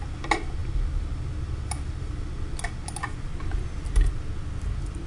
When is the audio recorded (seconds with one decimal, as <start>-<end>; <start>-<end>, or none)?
0.0-5.1